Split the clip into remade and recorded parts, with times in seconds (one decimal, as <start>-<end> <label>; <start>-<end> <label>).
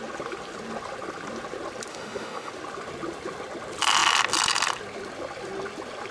0.0-1.9 recorded; 1.9-2.5 remade; 2.5-6.1 recorded